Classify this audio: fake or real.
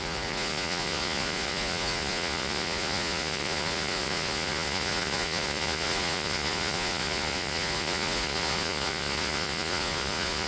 fake